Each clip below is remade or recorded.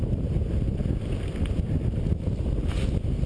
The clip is recorded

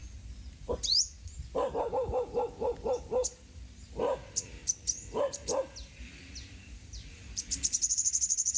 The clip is remade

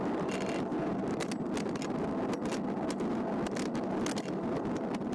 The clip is recorded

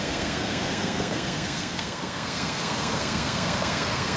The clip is remade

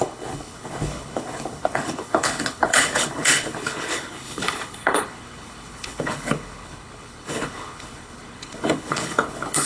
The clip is remade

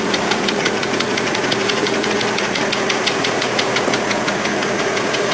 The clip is remade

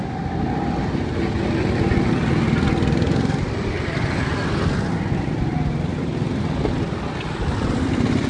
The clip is recorded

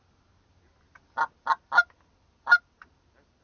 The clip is recorded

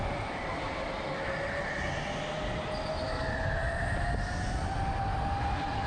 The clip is recorded